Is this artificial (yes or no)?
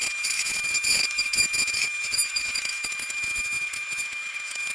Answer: yes